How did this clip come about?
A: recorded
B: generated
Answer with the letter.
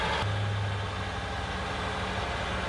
A